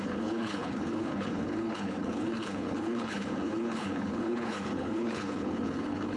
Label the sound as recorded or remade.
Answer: remade